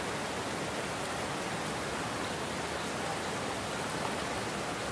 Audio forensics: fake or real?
real